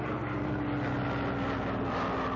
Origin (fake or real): real